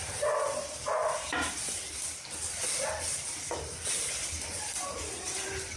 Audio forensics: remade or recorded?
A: recorded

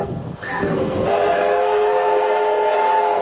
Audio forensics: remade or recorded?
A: remade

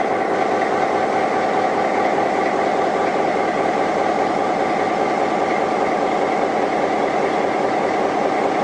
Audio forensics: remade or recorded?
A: recorded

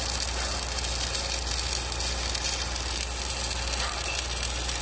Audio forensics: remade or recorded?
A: recorded